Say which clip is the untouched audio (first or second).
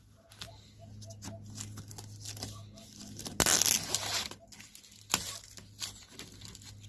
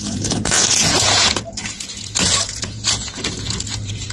first